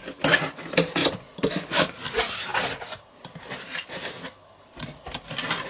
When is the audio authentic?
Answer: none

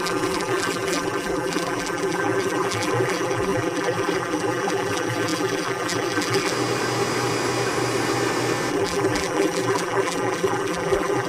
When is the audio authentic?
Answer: 6.5-8.7

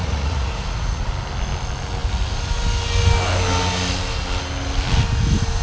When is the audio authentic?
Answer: 1.1-5.6

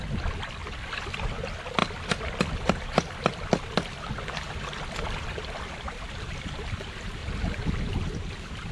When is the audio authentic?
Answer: 7.2-7.9

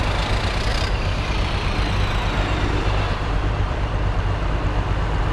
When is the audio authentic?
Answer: 0.0-0.7; 3.9-5.3